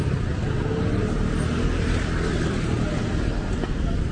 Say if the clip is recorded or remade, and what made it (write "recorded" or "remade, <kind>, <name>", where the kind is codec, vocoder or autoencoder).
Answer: recorded